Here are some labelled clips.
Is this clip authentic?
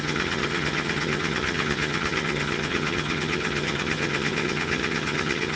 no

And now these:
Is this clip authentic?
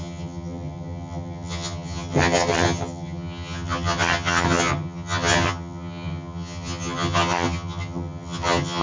no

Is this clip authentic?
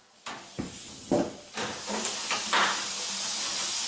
yes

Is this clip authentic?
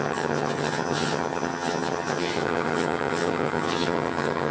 no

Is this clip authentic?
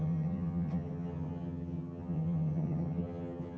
no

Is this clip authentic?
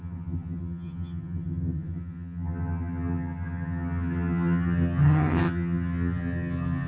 no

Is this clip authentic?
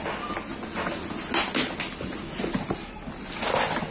yes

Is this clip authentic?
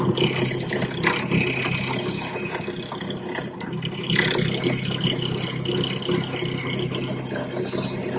yes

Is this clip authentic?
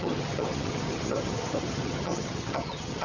no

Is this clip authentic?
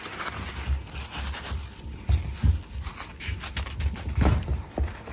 yes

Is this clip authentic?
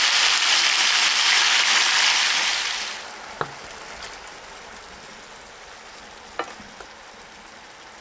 yes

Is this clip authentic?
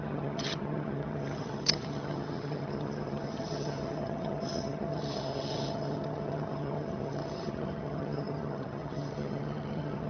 no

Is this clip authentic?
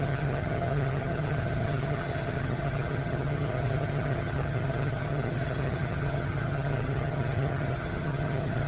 no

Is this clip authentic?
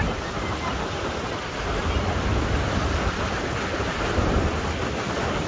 yes